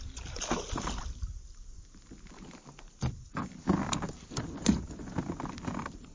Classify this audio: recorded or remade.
recorded